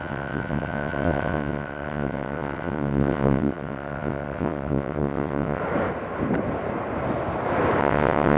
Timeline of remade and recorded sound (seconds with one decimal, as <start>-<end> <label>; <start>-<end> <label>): 0.0-5.6 remade; 5.6-7.8 recorded; 7.8-8.4 remade